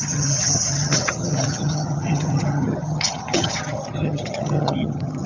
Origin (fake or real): fake